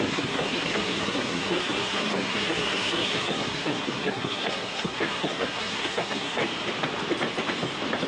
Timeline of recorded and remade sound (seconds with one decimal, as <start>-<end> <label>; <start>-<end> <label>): 0.0-6.4 remade; 6.4-8.1 recorded